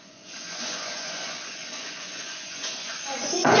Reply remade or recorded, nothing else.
remade